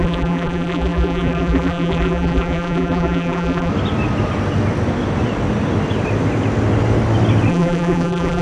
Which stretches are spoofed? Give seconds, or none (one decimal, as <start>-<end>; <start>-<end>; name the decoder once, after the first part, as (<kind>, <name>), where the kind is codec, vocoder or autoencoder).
0.0-3.7 (vocoder, BigVGAN v2); 7.5-8.4